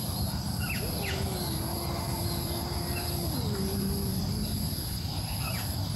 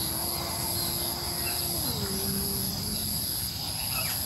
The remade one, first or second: first